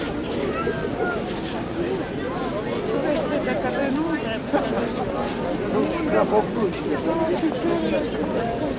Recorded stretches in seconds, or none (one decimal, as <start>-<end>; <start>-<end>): 0.0-8.8